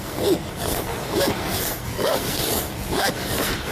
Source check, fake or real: fake